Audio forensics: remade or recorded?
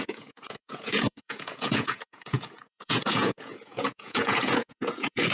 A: remade